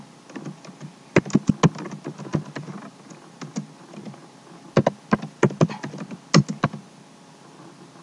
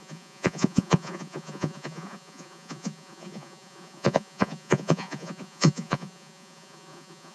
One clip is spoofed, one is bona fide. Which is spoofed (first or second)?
second